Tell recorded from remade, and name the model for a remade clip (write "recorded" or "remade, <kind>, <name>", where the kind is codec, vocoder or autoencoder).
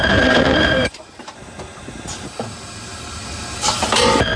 remade, vocoder, BigVGAN v2